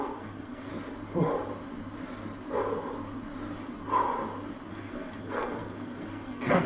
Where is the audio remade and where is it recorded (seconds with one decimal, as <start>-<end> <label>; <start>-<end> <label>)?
0.0-0.7 remade; 0.7-4.7 recorded; 4.7-6.7 remade